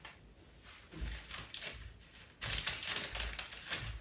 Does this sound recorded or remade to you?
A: recorded